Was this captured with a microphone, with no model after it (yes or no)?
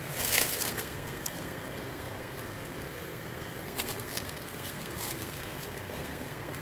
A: no